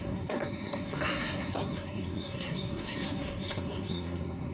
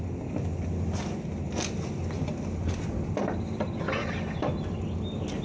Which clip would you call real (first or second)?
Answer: second